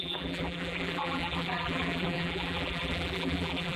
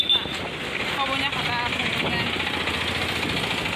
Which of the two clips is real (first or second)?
second